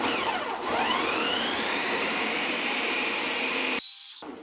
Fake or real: fake